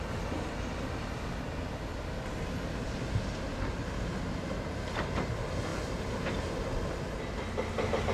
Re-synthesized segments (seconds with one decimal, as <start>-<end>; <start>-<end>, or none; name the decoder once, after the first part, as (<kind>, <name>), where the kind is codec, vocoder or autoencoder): none